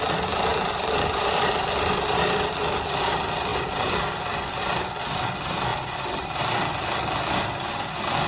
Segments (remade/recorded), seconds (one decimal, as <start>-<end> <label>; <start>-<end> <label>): 0.0-0.5 recorded; 0.5-2.5 remade; 2.5-5.7 recorded; 5.7-6.4 remade; 6.4-8.3 recorded